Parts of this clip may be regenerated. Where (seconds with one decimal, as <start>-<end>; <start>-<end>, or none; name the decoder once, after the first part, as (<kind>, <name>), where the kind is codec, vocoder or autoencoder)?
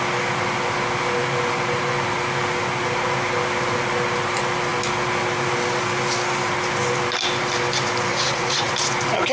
8.1-8.7 (vocoder, Vocos)